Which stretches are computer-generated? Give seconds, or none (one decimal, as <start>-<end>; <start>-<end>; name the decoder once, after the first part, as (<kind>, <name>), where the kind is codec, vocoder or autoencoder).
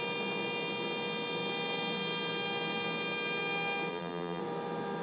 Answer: 3.9-4.4 (vocoder, BigVGAN v2)